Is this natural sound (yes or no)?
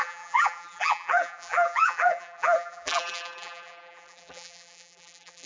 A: no